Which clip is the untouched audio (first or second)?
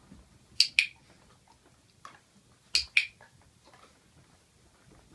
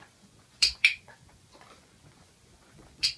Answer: first